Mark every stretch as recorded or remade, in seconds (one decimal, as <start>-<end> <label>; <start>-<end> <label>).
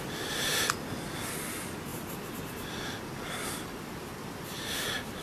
0.0-5.2 recorded